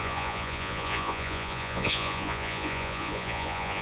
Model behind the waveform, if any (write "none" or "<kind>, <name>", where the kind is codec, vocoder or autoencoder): vocoder, Vocos